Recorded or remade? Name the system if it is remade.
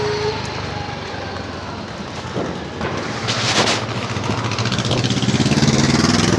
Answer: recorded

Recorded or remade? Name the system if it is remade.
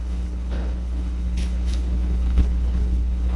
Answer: remade, codec, HILCodec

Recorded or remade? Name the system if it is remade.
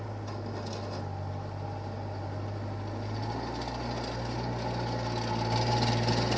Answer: recorded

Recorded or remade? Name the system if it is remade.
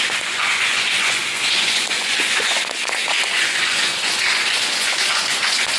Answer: remade, vocoder, Vocos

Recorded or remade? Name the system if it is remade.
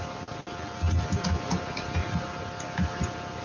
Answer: recorded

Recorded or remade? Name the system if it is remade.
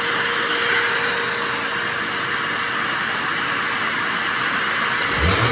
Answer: recorded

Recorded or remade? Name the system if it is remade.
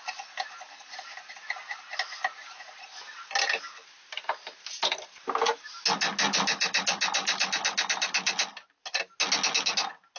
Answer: recorded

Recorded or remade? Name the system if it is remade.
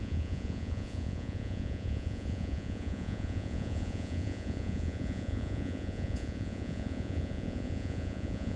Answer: remade, vocoder, Vocos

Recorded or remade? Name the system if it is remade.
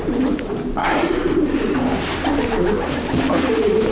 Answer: recorded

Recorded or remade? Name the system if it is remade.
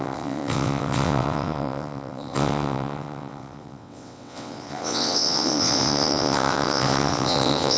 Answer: remade, vocoder, WaveNeXt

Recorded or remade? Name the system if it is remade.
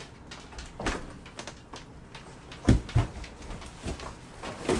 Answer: recorded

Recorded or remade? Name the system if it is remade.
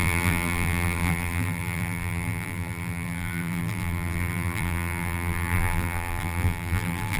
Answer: remade, vocoder, BigVGAN v2